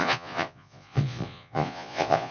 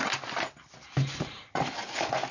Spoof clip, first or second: first